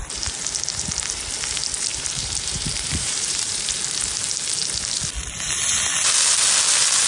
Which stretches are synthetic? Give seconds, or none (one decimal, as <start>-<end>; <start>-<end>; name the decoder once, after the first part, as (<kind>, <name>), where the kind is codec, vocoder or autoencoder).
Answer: 1.9-3.7 (vocoder, BigVGAN v2)